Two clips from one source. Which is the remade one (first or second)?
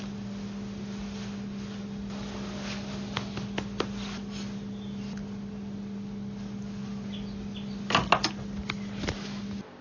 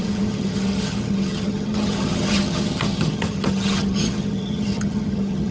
second